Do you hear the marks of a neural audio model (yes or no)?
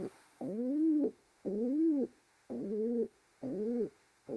yes